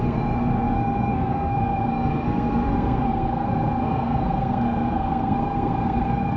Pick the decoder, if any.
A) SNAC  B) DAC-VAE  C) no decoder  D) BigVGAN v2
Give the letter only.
A